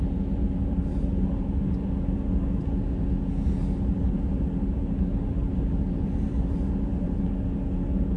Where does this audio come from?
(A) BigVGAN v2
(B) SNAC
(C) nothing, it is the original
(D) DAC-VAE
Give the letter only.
C